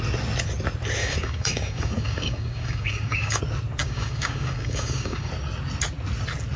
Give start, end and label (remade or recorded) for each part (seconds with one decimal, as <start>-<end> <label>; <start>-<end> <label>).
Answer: 0.0-1.0 recorded; 1.0-3.4 remade; 3.4-3.8 recorded; 3.8-5.3 remade; 5.3-6.6 recorded